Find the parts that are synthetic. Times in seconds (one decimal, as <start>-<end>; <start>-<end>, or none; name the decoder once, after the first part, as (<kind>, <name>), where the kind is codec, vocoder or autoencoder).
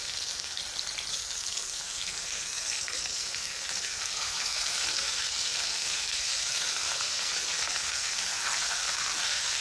0.0-0.6 (codec, SNAC); 1.1-9.6